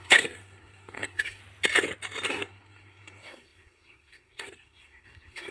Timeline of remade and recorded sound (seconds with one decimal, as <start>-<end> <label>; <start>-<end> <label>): 0.0-1.4 remade; 1.4-2.3 recorded; 2.3-5.5 remade